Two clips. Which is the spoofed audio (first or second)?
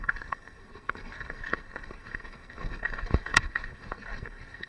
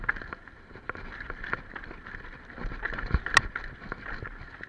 first